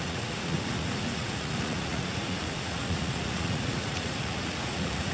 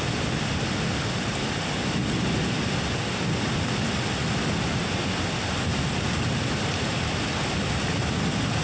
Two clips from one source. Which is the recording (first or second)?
second